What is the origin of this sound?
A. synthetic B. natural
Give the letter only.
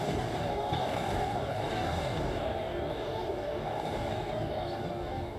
A